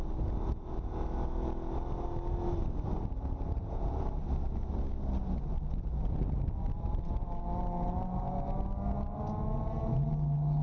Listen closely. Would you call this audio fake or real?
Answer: real